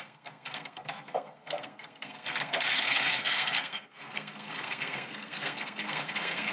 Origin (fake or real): fake